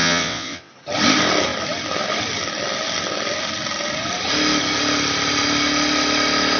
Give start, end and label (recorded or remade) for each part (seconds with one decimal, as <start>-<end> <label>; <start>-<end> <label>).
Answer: 0.0-0.7 remade; 0.7-6.6 recorded

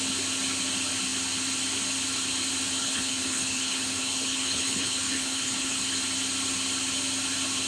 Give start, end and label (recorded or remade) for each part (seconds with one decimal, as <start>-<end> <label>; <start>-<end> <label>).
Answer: 0.0-2.8 recorded; 2.8-5.9 remade; 5.9-7.7 recorded

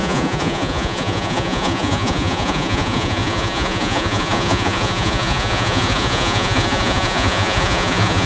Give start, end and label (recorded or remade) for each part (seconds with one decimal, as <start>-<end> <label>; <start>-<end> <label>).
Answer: 0.0-8.3 remade

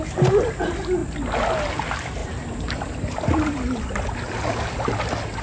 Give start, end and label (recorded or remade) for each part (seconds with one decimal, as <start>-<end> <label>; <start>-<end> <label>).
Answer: 0.0-2.2 recorded; 2.2-3.8 remade; 3.8-5.4 recorded

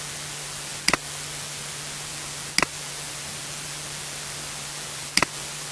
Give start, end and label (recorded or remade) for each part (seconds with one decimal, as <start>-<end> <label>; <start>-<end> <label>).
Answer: 0.0-5.7 recorded

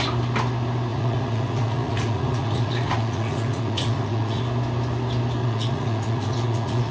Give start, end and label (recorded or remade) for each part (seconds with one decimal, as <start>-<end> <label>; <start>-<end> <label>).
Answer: 0.0-0.9 recorded; 0.9-4.4 remade; 4.4-5.4 recorded; 5.4-6.9 remade